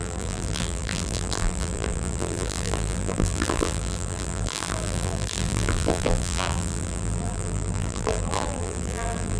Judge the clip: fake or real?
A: fake